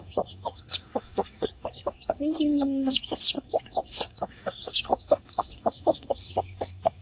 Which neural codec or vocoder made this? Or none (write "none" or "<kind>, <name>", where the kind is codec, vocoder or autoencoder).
codec, SNAC